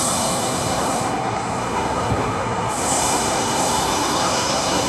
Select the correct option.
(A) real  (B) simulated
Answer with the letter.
B